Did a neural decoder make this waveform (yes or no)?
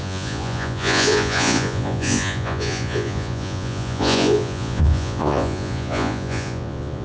yes